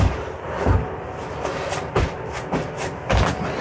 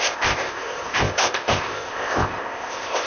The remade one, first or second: second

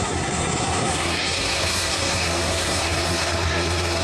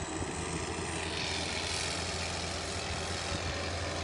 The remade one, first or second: first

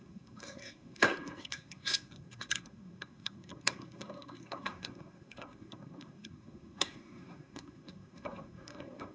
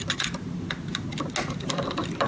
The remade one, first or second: first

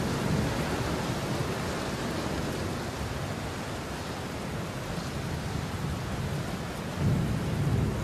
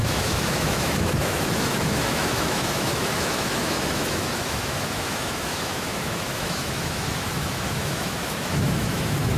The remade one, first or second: second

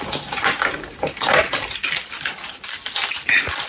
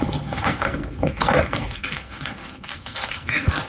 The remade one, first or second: second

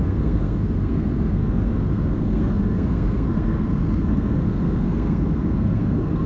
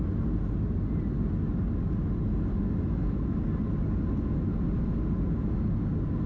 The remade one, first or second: first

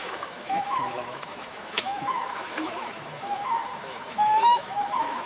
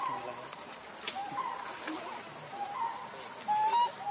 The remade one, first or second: first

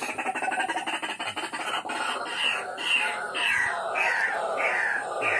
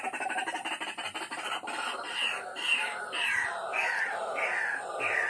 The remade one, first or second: second